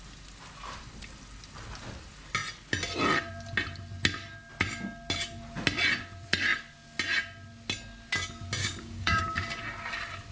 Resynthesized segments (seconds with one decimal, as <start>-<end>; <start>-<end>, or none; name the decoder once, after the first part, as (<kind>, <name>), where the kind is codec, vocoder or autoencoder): 8.6-9.2 (codec, DAC)